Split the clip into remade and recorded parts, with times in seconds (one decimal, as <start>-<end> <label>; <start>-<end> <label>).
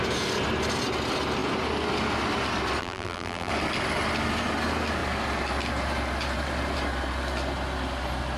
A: 0.0-2.8 recorded; 2.8-3.5 remade; 3.5-8.4 recorded